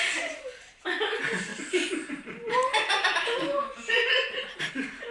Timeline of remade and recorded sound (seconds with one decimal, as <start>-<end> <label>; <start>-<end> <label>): 0.0-1.5 recorded; 1.5-4.6 remade; 4.6-5.1 recorded